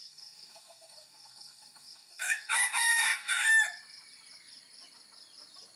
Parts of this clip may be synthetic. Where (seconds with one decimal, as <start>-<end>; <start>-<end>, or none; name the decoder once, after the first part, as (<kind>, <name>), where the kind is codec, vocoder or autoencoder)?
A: 0.0-3.5 (codec, DAC)